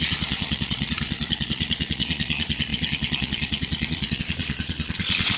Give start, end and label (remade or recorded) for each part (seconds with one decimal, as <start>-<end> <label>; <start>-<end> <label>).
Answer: 0.0-5.4 remade